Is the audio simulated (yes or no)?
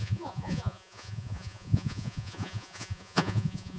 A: yes